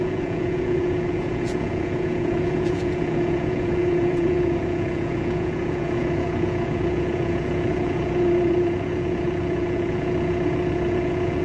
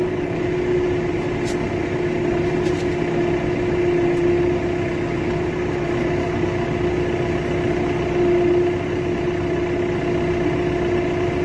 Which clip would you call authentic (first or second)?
second